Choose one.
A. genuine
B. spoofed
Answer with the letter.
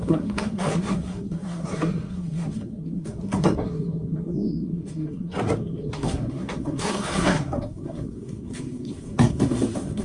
B